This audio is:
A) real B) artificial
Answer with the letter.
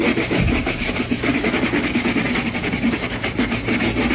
A